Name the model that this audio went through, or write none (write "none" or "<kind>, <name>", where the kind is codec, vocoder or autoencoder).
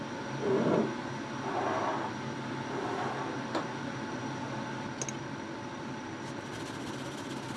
none